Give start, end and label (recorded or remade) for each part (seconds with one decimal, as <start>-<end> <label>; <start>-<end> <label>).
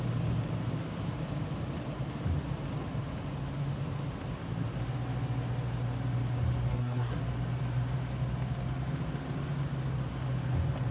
0.0-6.7 recorded; 6.7-7.2 remade; 7.2-10.9 recorded